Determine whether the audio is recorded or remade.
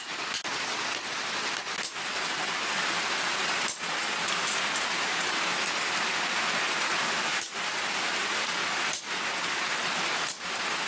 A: recorded